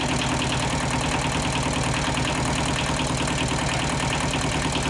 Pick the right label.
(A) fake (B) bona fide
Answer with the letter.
B